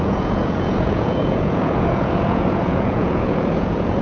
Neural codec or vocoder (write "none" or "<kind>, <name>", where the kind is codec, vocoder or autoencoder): vocoder, Vocos